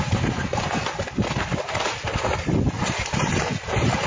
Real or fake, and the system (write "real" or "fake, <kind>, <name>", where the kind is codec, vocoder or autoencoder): real